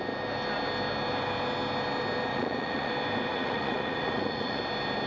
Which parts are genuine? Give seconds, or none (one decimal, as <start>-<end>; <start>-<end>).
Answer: 0.0-2.3; 2.9-3.3; 4.6-5.1